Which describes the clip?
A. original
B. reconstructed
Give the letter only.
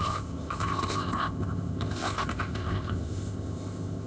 B